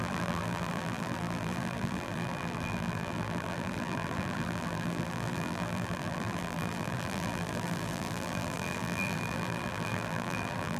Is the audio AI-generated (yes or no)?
yes